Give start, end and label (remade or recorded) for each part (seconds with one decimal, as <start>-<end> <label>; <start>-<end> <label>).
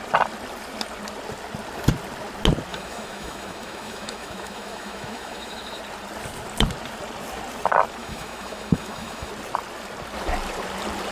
0.0-2.7 recorded; 2.7-5.8 remade; 5.8-8.0 recorded; 8.0-9.3 remade; 9.3-11.1 recorded